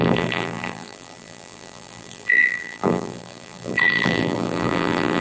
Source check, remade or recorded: remade